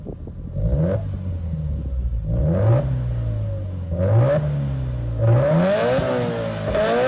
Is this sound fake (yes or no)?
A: no